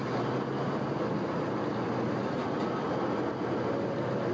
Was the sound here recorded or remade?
recorded